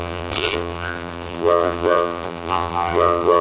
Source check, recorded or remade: remade